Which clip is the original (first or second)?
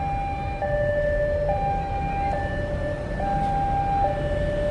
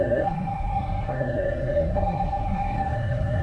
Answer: first